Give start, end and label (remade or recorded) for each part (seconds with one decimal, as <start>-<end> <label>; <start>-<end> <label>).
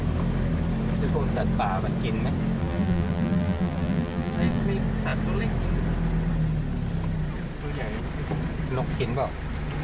0.0-2.6 recorded; 2.6-4.6 remade; 4.6-9.8 recorded